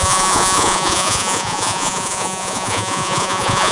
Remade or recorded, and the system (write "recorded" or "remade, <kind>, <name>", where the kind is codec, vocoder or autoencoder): remade, vocoder, Vocos